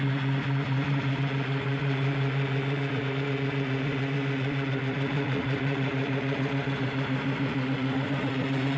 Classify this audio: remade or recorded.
remade